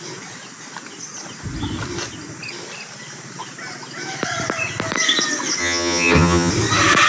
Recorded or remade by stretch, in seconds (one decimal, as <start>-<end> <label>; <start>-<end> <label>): 0.0-5.6 recorded; 5.6-6.5 remade; 6.5-7.1 recorded